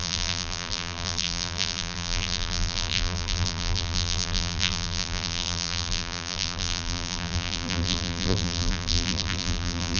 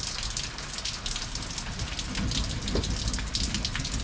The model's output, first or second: first